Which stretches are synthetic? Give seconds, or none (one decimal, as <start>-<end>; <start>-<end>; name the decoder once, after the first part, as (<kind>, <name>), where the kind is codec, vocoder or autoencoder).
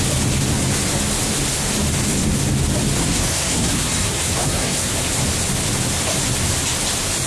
3.0-4.9 (codec, SNAC)